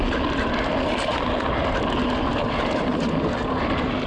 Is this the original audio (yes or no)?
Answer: yes